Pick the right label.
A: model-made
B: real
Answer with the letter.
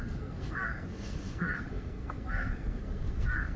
A